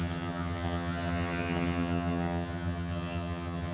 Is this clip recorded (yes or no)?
no